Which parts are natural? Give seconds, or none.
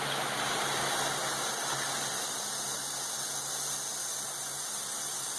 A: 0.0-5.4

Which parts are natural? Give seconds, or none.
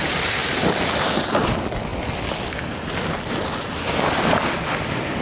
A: 0.0-5.2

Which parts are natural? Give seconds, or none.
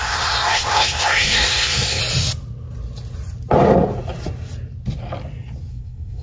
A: 2.0-5.7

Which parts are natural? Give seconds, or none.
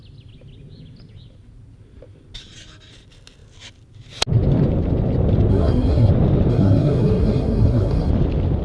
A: 0.0-5.5; 6.1-6.5; 8.1-8.6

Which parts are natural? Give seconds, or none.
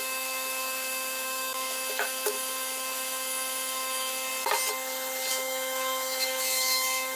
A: 4.3-5.3